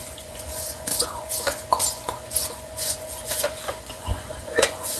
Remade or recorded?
remade